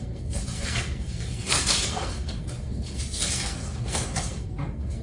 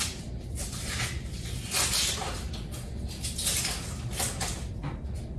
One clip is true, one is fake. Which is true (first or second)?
second